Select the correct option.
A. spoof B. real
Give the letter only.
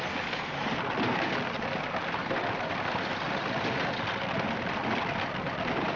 B